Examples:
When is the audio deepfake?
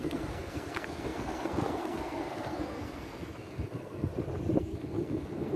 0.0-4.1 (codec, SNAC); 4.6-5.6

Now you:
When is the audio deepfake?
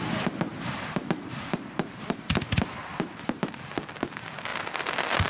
0.5-2.4 (vocoder, BigVGAN v2); 2.9-3.6; 4.5-5.3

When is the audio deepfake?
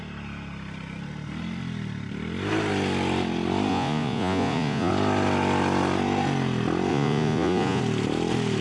3.7-4.9 (vocoder, Vocos); 6.9-7.8